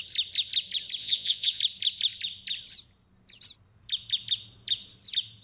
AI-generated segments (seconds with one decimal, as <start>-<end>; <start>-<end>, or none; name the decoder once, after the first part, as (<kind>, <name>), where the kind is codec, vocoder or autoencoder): 1.0-1.6 (vocoder, Vocos)